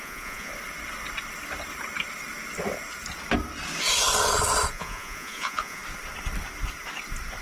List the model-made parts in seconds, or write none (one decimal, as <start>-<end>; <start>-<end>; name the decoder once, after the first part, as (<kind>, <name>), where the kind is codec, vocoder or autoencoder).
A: 0.0-0.5 (vocoder, Vocos); 4.7-5.8